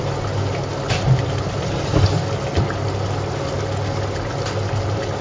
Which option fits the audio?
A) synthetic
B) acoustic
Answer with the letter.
B